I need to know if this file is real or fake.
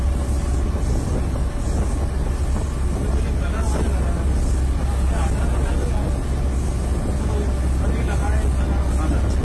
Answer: real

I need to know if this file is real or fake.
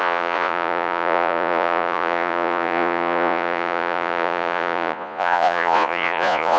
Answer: fake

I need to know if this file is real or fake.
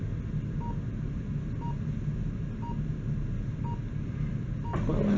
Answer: real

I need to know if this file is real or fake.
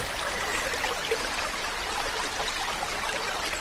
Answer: real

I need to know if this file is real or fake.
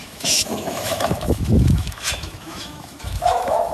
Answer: fake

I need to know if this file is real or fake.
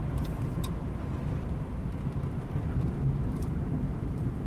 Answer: fake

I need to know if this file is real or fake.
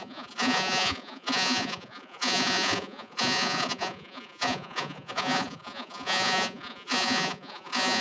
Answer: fake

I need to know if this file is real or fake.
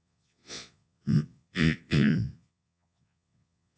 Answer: fake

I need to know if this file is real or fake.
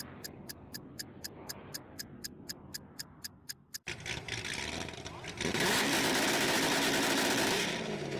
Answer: fake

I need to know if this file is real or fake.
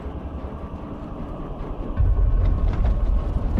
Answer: real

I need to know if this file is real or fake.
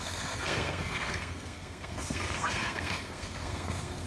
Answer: fake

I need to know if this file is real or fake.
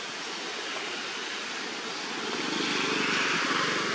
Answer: real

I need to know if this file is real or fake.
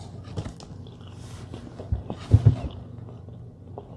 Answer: real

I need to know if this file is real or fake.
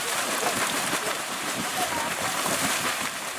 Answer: fake